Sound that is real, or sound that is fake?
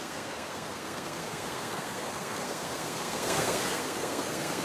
fake